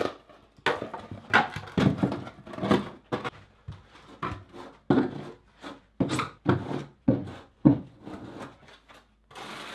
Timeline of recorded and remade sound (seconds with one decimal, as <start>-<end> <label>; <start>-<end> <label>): 0.0-6.8 recorded; 6.8-8.7 remade; 8.7-9.7 recorded